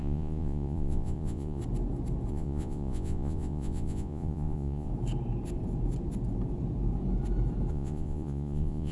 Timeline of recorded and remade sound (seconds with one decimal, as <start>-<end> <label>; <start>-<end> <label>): 0.0-1.6 remade; 1.6-2.3 recorded; 2.3-4.9 remade; 4.9-7.7 recorded; 7.7-8.9 remade